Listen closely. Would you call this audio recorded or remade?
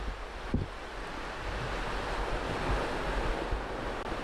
recorded